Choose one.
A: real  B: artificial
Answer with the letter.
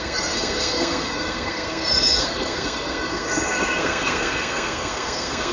B